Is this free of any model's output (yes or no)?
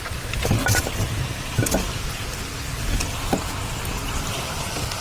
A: yes